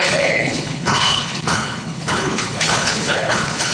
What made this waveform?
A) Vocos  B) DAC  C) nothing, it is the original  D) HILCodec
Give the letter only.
D